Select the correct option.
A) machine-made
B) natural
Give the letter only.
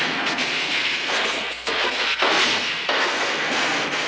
A